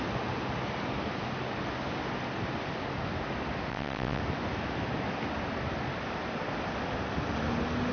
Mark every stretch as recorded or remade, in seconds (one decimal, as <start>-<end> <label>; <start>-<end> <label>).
0.0-3.7 recorded; 3.7-4.2 remade; 4.2-7.9 recorded